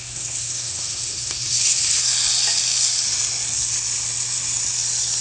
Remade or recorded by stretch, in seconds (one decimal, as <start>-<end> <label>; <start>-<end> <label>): 0.0-2.0 remade; 2.0-5.2 recorded